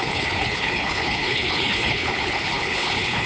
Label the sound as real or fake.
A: fake